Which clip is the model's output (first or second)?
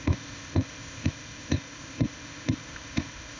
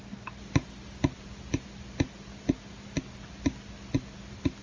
first